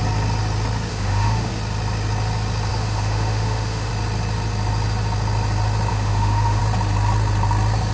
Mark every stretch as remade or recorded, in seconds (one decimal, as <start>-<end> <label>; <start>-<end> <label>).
0.0-0.9 recorded; 0.9-1.5 remade; 1.5-2.7 recorded; 2.7-3.9 remade; 3.9-5.9 recorded; 5.9-6.6 remade; 6.6-7.9 recorded